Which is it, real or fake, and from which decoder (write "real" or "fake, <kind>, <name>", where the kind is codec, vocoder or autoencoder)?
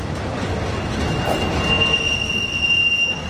real